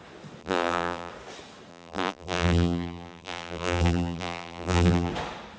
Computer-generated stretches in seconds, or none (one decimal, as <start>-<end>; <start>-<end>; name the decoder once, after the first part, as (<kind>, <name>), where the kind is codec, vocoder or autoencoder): 0.4-1.1 (vocoder, BigVGAN v2); 1.7-5.1